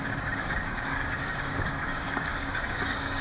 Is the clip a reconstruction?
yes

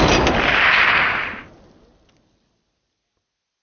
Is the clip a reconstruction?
no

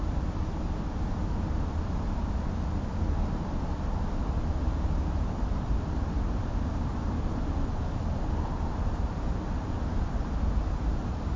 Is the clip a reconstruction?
no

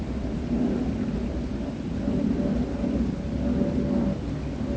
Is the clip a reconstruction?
no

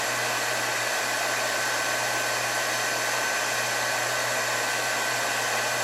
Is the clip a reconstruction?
no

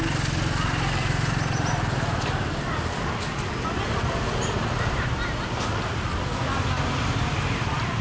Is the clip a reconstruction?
no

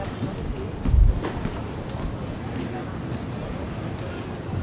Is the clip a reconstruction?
no